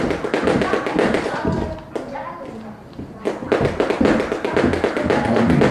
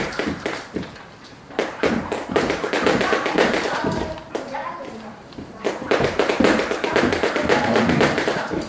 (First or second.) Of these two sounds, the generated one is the second